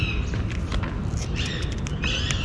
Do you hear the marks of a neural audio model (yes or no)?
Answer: no